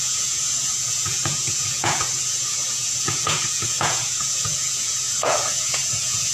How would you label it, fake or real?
fake